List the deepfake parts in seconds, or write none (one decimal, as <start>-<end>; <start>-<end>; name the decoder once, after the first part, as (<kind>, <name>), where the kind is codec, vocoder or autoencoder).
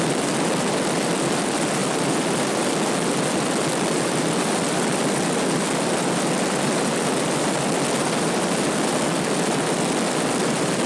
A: none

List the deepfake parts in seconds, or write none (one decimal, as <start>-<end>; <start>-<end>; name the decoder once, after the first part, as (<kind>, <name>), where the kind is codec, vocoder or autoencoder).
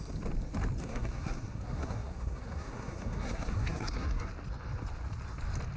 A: 0.8-4.3 (codec, SNAC)